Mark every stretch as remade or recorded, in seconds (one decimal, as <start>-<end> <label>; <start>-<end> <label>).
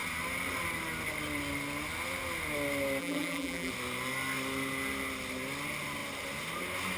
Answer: 0.0-3.0 recorded; 3.0-3.7 remade; 3.7-7.0 recorded